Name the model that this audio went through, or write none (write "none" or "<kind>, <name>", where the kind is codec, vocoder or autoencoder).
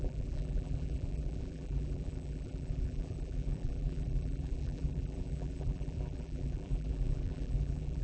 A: vocoder, BigVGAN v2